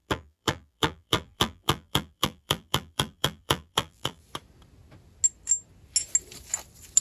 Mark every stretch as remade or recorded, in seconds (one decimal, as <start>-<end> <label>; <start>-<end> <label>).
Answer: 0.0-4.2 remade; 4.2-7.0 recorded